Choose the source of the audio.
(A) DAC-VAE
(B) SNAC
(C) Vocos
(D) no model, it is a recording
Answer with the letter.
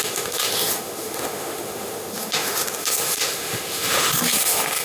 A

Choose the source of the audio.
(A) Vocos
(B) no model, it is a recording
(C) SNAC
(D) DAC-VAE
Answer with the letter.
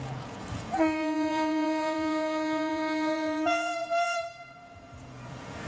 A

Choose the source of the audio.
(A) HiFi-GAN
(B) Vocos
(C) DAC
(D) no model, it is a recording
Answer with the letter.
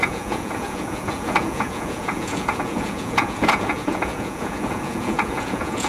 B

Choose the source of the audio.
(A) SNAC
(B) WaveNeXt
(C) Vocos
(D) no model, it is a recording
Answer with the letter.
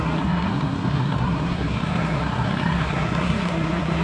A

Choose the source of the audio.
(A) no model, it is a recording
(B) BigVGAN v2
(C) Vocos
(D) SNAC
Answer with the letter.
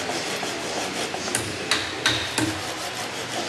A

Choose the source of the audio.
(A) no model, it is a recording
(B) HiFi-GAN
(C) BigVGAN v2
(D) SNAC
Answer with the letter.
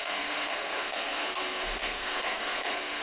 D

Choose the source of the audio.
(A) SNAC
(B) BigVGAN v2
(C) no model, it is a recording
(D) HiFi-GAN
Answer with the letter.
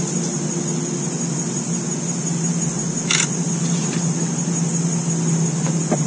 C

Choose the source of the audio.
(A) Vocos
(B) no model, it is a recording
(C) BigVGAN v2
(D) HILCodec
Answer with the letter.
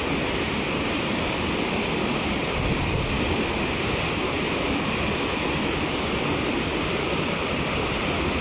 B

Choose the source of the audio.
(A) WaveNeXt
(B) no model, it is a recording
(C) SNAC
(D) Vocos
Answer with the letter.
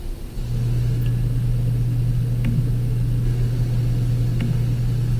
B